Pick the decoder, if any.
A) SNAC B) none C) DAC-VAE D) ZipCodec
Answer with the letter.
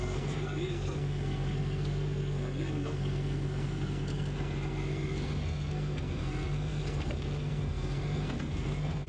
A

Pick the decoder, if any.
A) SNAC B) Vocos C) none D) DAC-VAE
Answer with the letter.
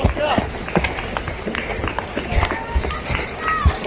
C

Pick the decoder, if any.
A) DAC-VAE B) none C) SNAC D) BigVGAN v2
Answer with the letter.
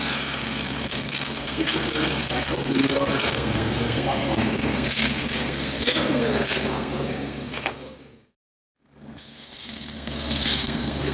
C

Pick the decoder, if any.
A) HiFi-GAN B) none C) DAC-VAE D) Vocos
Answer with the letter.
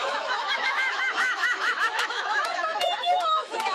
C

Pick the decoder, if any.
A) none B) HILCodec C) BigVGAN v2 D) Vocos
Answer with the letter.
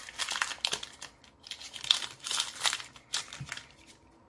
A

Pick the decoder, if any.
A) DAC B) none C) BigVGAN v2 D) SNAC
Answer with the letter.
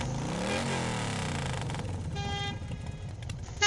B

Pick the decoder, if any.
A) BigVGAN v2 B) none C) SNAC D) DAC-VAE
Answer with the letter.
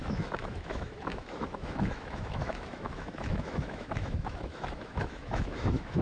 D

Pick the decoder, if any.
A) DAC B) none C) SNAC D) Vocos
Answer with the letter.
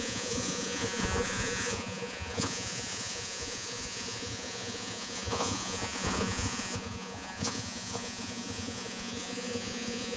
D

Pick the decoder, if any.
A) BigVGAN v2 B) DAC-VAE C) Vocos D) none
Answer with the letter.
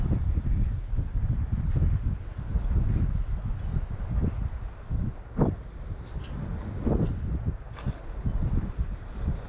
D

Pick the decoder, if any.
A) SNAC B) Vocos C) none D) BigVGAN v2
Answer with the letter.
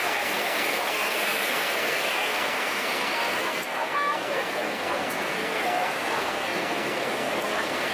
A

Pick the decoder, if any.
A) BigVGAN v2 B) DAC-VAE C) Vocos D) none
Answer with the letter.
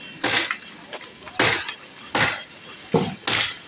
D